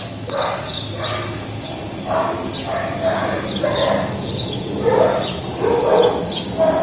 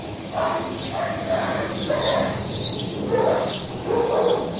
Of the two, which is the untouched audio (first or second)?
first